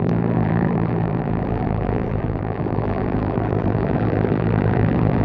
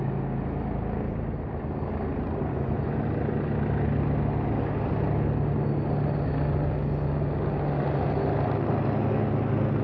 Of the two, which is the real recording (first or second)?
second